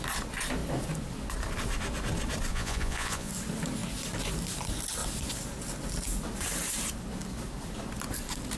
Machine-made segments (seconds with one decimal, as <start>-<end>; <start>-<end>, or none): 2.5-3.3